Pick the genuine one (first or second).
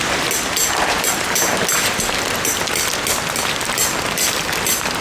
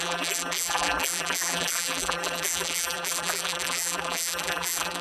first